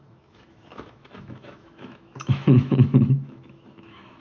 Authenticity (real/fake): fake